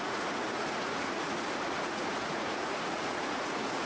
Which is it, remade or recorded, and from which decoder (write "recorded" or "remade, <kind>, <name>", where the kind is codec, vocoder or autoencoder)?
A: remade, vocoder, Vocos